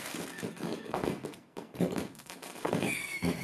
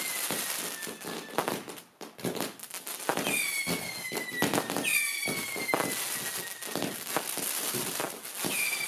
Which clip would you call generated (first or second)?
first